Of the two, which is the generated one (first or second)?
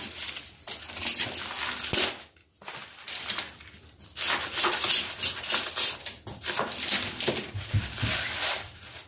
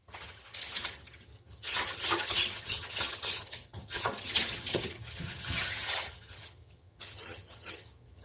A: second